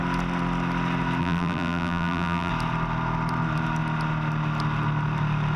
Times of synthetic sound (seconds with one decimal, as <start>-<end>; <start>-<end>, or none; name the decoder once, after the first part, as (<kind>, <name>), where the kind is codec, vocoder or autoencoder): 1.2-2.5 (vocoder, BigVGAN v2)